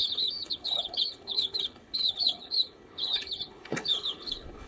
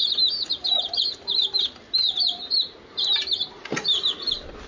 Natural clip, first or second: second